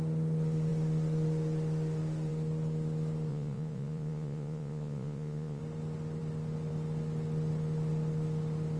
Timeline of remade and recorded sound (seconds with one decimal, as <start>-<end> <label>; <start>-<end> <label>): 0.0-3.3 recorded; 3.3-5.6 remade; 5.6-8.8 recorded